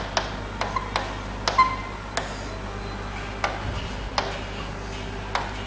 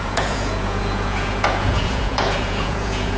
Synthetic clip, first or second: second